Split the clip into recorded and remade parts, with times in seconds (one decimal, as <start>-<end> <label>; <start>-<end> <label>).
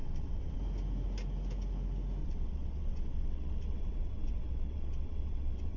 0.0-0.6 remade; 0.6-2.2 recorded; 2.2-5.8 remade